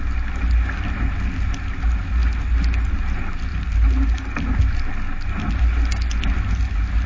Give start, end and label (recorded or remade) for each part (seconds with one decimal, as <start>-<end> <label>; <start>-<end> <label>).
0.0-7.1 recorded